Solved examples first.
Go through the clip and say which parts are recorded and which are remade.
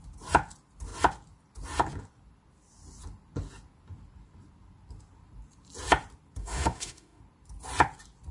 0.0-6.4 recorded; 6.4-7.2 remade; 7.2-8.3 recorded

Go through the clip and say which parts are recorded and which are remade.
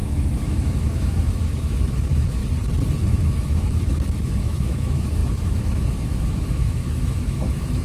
0.0-2.4 remade; 2.4-3.0 recorded; 3.0-7.8 remade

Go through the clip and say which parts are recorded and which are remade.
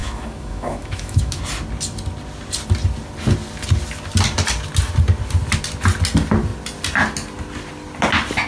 0.0-1.4 remade; 1.4-8.5 recorded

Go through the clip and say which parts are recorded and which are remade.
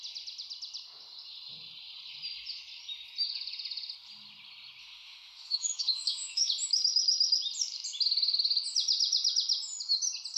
0.0-4.8 recorded; 4.8-6.5 remade; 6.5-10.4 recorded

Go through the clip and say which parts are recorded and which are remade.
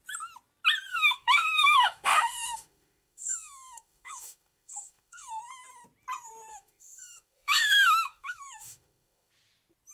0.0-0.9 recorded; 0.9-5.4 remade; 5.4-6.5 recorded; 6.5-9.3 remade; 9.3-9.9 recorded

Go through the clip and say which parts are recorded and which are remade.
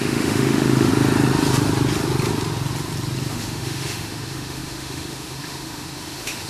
0.0-0.9 remade; 0.9-3.3 recorded; 3.3-6.5 remade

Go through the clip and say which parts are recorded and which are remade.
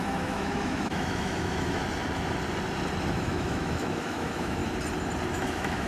0.0-1.8 remade; 1.8-3.1 recorded; 3.1-4.6 remade; 4.6-5.3 recorded; 5.3-5.9 remade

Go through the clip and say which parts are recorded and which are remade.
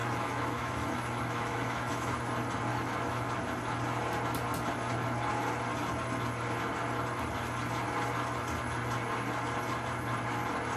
0.0-2.1 remade; 2.1-2.7 recorded; 2.7-3.3 remade; 3.3-10.8 recorded